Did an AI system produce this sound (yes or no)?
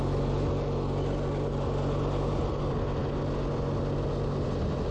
no